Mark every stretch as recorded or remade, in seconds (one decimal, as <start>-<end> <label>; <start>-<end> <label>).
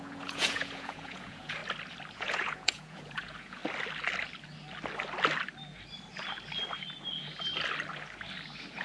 0.0-1.6 remade; 1.6-2.1 recorded; 2.1-3.6 remade; 3.6-8.8 recorded